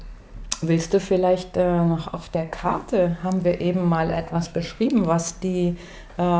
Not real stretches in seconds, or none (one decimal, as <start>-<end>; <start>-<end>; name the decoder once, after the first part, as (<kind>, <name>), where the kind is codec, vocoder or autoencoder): 2.1-2.8 (codec, SNAC); 4.1-4.9